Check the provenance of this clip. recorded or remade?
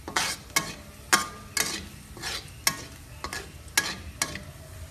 recorded